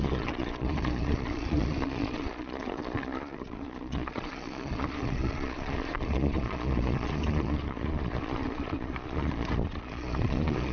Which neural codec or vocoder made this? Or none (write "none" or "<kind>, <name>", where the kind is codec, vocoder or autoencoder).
vocoder, Vocos